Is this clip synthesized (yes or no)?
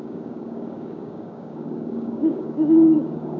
yes